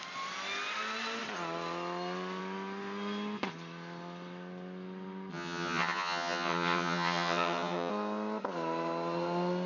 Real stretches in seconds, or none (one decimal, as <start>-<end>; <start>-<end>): 0.0-5.3; 7.9-9.7